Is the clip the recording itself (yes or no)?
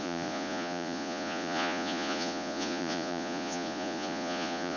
no